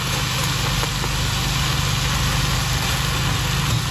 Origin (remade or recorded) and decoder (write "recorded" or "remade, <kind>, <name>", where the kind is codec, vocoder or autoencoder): recorded